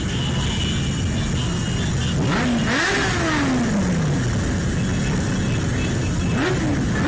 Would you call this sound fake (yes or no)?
no